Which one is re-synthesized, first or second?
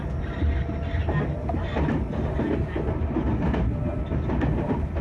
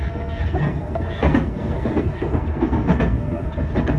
second